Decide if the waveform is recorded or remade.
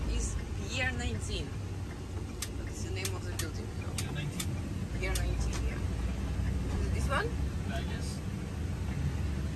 recorded